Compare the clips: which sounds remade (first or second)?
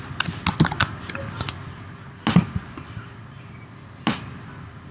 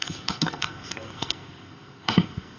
second